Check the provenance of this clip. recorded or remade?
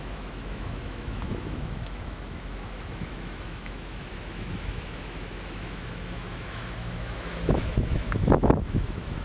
remade